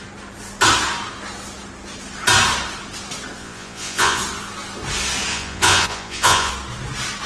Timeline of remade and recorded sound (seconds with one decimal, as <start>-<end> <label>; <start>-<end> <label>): 0.0-3.4 recorded; 3.4-4.2 remade; 4.2-5.3 recorded; 5.3-6.5 remade; 6.5-7.3 recorded